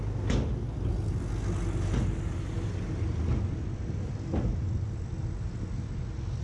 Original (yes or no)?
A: yes